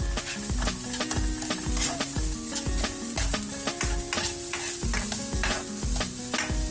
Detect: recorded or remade recorded